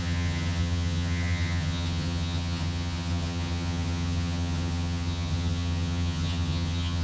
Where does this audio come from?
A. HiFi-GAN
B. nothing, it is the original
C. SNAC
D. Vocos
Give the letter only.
A